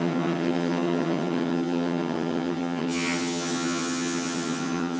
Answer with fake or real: fake